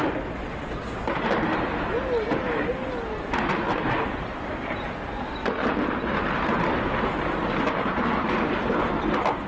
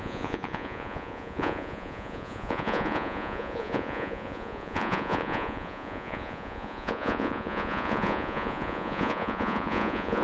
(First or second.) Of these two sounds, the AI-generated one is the second